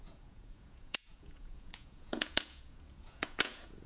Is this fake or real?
fake